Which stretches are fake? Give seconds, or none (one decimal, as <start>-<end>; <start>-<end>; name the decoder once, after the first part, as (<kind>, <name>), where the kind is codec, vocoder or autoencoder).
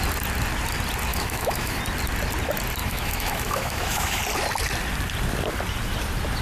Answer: 1.1-1.8 (autoencoder, DAC-VAE); 2.8-4.2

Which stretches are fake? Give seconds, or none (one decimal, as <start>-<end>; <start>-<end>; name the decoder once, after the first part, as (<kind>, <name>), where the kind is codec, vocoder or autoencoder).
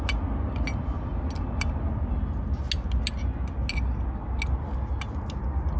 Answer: none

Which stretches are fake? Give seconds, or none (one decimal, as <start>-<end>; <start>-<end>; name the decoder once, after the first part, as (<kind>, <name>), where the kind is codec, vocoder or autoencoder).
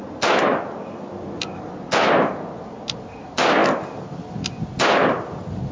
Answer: none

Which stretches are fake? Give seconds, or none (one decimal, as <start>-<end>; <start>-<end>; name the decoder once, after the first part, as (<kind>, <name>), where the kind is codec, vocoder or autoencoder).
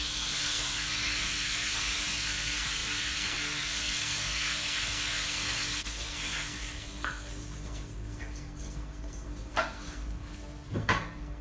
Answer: 0.0-11.4 (codec, SNAC)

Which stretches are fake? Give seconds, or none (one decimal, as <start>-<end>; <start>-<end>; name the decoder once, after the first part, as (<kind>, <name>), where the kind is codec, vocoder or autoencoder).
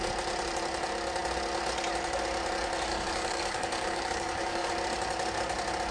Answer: 2.9-4.7 (codec, DAC)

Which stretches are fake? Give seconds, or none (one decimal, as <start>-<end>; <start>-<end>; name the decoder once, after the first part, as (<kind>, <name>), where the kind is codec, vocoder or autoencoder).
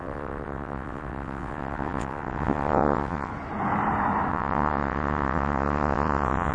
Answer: 0.0-3.3 (vocoder, WaveNeXt); 4.3-6.5